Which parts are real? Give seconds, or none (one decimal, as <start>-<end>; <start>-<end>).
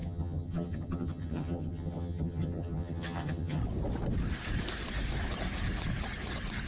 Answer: 3.6-6.7